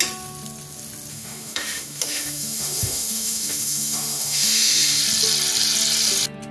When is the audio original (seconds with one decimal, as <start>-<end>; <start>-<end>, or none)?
0.0-1.1; 5.0-6.5